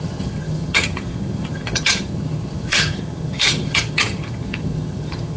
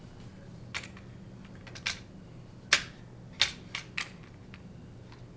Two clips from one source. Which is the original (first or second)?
second